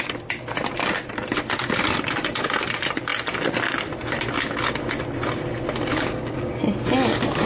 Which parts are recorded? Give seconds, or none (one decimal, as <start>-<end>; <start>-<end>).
0.0-5.9; 6.6-7.5

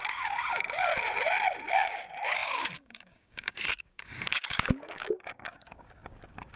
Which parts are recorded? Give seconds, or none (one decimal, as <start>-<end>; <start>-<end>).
0.9-1.7

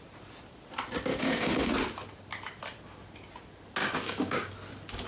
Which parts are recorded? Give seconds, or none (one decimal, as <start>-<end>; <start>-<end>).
0.0-1.1; 1.7-3.8; 4.5-5.1